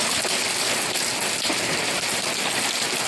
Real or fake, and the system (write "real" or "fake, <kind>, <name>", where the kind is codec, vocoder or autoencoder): fake, vocoder, BigVGAN v2